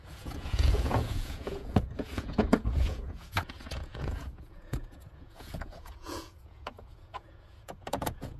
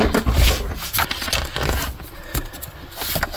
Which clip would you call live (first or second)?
second